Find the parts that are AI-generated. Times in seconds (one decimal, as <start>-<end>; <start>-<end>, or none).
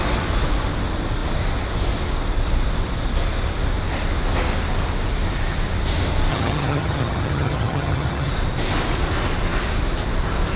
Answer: 6.3-8.3